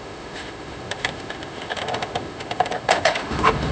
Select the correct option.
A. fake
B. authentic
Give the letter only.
A